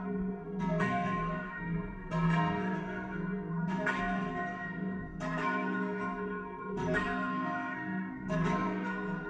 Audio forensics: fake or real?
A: fake